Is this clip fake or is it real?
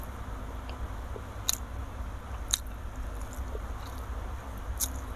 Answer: real